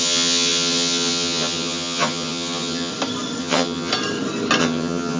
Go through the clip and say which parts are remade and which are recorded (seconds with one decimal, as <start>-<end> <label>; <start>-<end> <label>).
0.0-2.9 remade; 2.9-3.4 recorded; 3.4-3.9 remade; 3.9-4.6 recorded; 4.6-5.2 remade